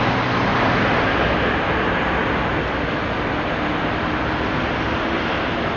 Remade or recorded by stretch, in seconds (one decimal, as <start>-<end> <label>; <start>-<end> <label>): 0.0-5.8 recorded